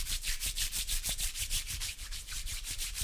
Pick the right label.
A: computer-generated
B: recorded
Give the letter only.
A